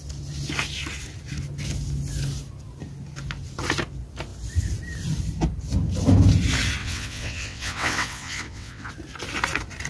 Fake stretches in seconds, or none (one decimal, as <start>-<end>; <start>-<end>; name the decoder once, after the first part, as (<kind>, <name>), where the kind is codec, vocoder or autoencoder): 6.8-8.9 (vocoder, WaveNeXt)